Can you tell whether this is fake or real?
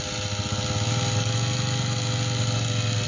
real